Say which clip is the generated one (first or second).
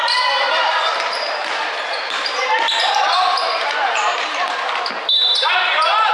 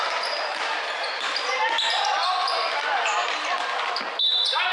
first